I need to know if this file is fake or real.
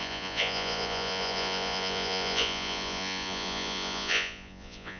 fake